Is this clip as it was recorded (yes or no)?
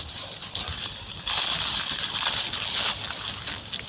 yes